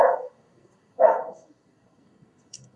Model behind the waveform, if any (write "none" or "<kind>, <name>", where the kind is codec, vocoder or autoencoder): codec, SNAC